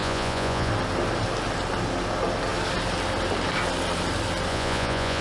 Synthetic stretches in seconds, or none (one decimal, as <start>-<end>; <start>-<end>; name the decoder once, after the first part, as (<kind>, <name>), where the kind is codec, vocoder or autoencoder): 0.0-0.7 (vocoder, Vocos); 4.5-5.2